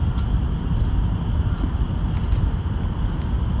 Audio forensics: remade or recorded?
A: recorded